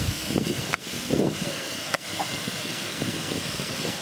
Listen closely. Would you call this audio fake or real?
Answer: fake